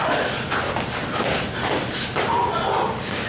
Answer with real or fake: real